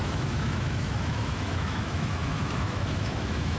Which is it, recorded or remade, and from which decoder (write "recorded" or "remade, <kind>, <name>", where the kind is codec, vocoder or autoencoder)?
remade, autoencoder, DAC-VAE